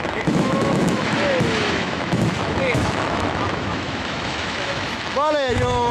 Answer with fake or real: fake